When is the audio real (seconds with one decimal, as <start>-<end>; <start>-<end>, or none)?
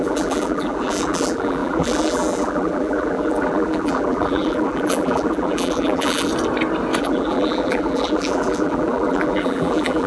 6.3-7.0